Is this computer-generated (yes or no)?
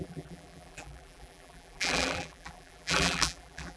yes